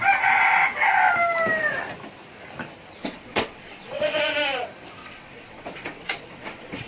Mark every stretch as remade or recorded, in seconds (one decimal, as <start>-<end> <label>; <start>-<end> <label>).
0.0-3.0 recorded; 3.0-4.2 remade; 4.2-5.0 recorded; 5.0-6.9 remade